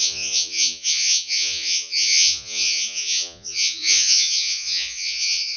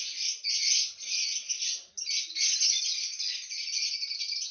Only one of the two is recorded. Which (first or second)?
second